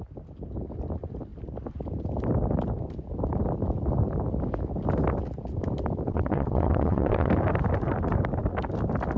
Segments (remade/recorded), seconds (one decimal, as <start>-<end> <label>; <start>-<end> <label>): 0.0-6.1 recorded; 6.1-7.3 remade; 7.3-9.2 recorded

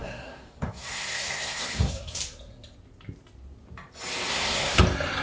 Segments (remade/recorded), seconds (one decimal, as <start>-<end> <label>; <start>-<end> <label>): 0.0-2.2 remade; 2.2-4.3 recorded; 4.3-4.8 remade; 4.8-5.2 recorded

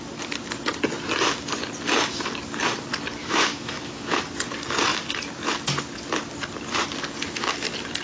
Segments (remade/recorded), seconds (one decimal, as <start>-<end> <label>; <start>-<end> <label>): 0.0-3.2 recorded; 3.2-4.2 remade; 4.2-8.0 recorded

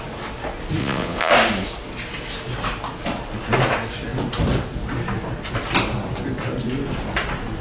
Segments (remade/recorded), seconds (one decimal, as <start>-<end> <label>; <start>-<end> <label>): 0.0-0.8 recorded; 0.8-1.3 remade; 1.3-7.6 recorded

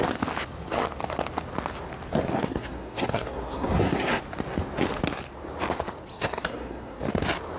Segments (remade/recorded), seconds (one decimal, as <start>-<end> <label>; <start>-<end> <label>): 0.0-2.3 recorded; 2.3-4.2 remade; 4.2-6.1 recorded; 6.1-7.1 remade; 7.1-7.6 recorded

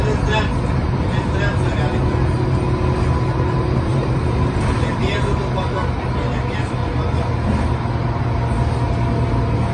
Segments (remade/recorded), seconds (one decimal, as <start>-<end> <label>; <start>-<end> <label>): 0.0-3.9 recorded; 3.9-5.2 remade; 5.2-9.7 recorded